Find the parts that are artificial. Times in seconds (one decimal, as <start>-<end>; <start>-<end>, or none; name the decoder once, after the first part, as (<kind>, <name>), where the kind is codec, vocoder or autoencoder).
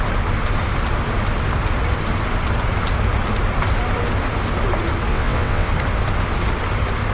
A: 5.1-5.7 (vocoder, WaveNeXt)